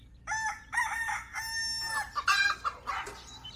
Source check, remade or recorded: recorded